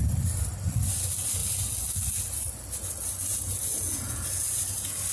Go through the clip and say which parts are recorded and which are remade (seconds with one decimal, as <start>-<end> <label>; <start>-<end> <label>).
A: 0.0-3.3 recorded; 3.3-5.1 remade